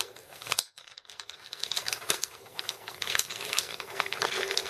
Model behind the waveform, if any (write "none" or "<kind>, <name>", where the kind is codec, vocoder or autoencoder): codec, SNAC